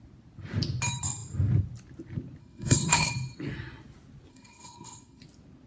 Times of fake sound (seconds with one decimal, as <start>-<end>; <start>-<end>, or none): 2.4-3.1; 4.3-5.2